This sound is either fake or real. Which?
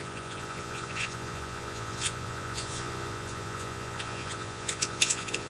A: fake